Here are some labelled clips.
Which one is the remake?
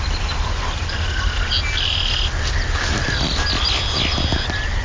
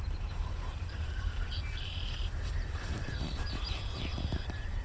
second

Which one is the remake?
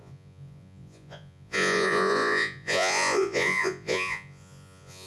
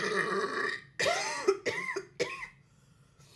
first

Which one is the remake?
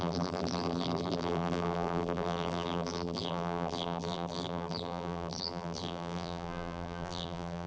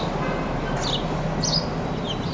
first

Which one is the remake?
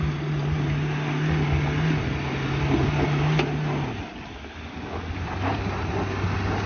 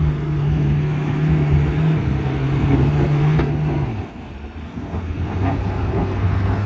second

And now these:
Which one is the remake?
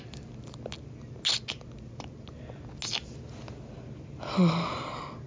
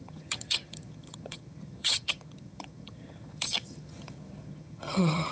second